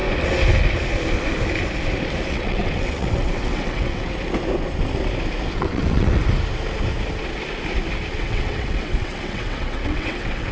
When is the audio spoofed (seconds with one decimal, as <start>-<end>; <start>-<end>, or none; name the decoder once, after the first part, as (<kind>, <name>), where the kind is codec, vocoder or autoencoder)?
2.3-4.1 (vocoder, WaveNeXt); 5.6-6.2; 8.1-10.5